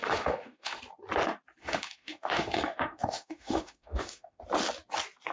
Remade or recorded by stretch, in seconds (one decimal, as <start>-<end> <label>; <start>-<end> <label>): 0.0-0.8 remade; 0.8-1.6 recorded; 1.6-4.4 remade; 4.4-5.3 recorded